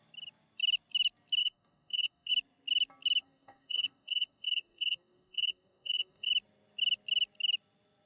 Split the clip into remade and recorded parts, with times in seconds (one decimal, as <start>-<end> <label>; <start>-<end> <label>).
0.0-1.4 recorded; 1.4-2.3 remade; 2.3-3.2 recorded; 3.2-6.3 remade; 6.3-8.1 recorded